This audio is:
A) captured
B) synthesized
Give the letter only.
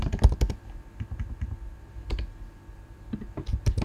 A